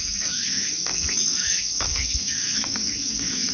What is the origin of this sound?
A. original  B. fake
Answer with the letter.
B